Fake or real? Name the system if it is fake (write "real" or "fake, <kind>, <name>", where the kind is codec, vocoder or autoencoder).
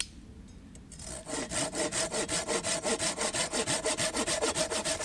real